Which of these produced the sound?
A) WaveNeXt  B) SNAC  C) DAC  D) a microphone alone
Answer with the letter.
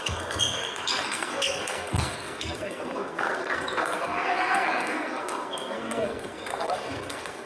B